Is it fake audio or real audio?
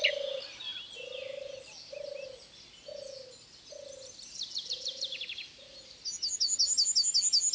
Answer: real